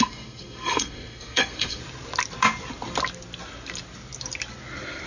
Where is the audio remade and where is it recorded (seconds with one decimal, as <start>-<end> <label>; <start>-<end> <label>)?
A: 0.0-1.8 remade; 1.8-5.1 recorded